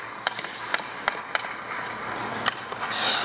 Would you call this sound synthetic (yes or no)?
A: no